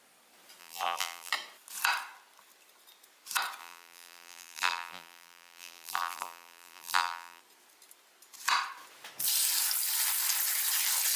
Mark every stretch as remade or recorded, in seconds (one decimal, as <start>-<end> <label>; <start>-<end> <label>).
0.0-0.6 recorded; 0.6-1.3 remade; 1.3-3.6 recorded; 3.6-7.4 remade; 7.4-11.2 recorded

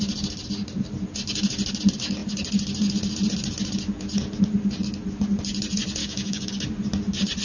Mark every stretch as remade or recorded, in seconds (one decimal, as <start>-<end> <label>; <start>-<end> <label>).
0.0-6.0 recorded; 6.0-6.5 remade; 6.5-7.4 recorded

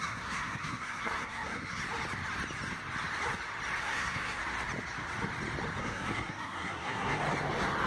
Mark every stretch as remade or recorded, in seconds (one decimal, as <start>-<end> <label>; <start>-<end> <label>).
0.0-1.8 remade; 1.8-3.8 recorded; 3.8-4.4 remade; 4.4-5.8 recorded; 5.8-7.2 remade; 7.2-7.9 recorded

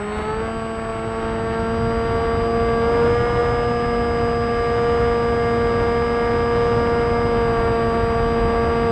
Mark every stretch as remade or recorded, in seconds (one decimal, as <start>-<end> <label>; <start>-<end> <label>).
0.0-8.9 recorded